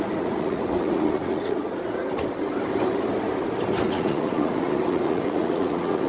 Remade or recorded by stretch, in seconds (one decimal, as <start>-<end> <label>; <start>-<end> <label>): 0.0-2.0 remade; 2.0-3.8 recorded; 3.8-6.1 remade